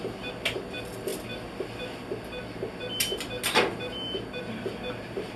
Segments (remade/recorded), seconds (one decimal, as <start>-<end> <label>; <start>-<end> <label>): 0.0-5.4 recorded